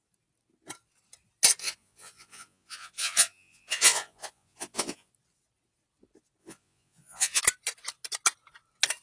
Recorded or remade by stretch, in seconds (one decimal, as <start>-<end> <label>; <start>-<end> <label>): 0.0-1.6 recorded; 1.6-5.1 remade; 5.1-6.4 recorded; 6.4-7.4 remade; 7.4-9.0 recorded